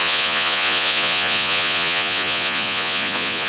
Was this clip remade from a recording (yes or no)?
yes